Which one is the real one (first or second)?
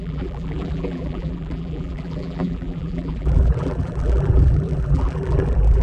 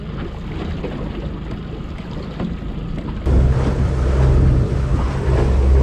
second